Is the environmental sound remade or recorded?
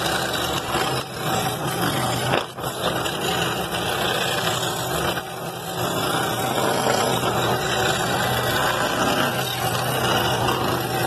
recorded